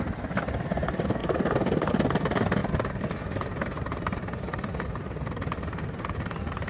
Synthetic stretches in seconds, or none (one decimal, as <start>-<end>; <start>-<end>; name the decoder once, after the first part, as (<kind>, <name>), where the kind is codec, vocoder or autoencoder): none